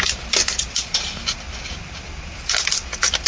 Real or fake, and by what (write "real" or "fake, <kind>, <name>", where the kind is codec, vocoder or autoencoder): real